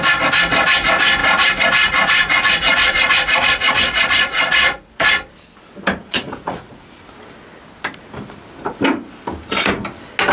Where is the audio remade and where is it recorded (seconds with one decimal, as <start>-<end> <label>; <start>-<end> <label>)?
0.0-1.2 recorded; 1.2-5.1 remade; 5.1-6.0 recorded; 6.0-6.7 remade; 6.7-10.3 recorded